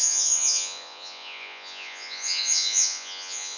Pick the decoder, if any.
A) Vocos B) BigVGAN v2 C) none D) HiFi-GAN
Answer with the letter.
A